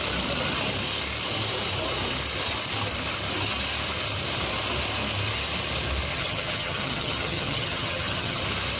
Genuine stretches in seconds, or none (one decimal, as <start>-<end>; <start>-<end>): 0.0-6.1; 8.4-8.8